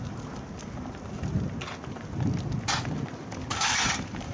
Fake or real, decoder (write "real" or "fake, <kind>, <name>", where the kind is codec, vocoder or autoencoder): real